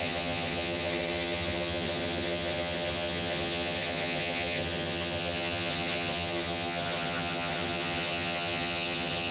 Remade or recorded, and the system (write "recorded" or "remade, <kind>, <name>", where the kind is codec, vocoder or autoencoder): remade, vocoder, HiFi-GAN